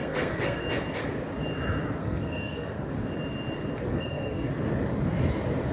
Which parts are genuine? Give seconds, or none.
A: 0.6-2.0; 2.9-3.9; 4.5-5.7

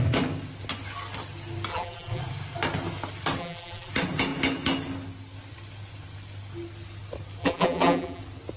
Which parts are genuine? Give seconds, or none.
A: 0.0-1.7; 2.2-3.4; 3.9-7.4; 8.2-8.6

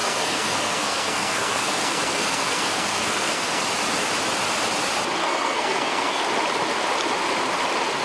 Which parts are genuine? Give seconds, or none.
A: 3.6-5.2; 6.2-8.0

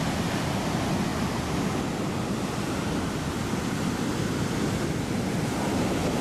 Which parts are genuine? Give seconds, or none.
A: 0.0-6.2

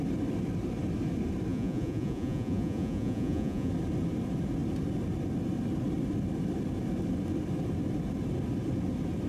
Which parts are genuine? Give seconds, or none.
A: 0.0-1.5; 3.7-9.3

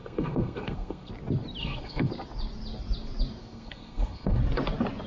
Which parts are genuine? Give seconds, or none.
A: 1.1-1.6; 2.1-3.4; 4.4-5.1

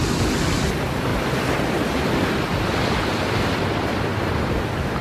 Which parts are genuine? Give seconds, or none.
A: none

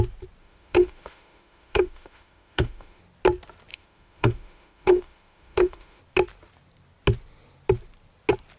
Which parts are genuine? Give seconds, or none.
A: 0.0-0.4; 3.0-3.7; 6.0-8.6